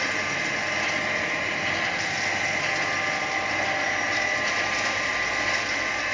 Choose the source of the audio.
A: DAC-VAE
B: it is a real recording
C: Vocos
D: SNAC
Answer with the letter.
B